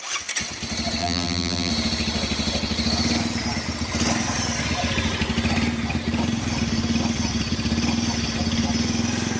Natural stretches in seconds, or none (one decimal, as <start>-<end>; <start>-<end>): 0.0-1.0; 1.7-9.4

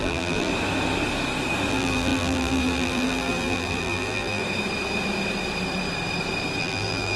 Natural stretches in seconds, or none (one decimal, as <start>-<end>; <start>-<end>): 0.5-1.7; 4.4-6.6

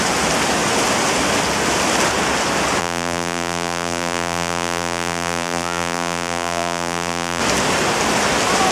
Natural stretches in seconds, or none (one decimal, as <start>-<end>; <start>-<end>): 0.0-2.8; 7.4-8.7

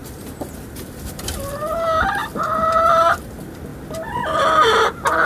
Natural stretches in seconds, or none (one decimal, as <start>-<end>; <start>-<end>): 0.0-5.3

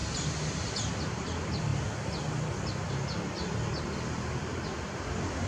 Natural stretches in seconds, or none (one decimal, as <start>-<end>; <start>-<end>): 0.0-5.5

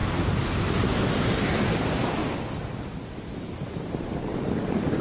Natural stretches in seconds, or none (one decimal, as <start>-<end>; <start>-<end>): 2.2-3.3; 4.3-5.0